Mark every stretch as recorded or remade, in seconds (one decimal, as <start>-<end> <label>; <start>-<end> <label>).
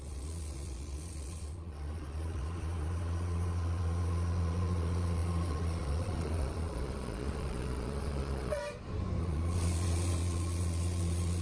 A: 0.0-8.6 remade; 8.6-9.2 recorded; 9.2-11.4 remade